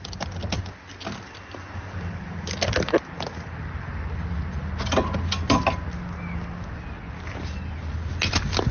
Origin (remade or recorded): recorded